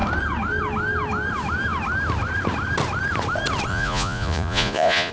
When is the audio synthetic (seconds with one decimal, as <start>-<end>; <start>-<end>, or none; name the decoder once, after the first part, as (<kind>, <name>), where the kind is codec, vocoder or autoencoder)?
3.7-5.1 (vocoder, Vocos)